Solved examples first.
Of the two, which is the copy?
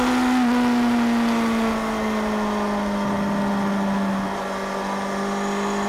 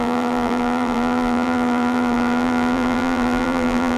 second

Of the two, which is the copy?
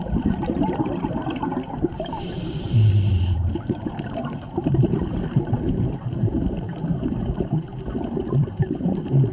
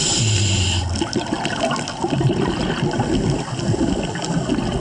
first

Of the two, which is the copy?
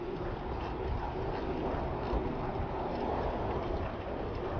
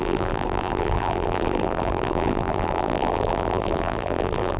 second